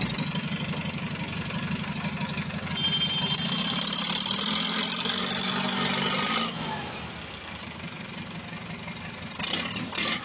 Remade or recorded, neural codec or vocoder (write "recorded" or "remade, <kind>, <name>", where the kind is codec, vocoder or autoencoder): recorded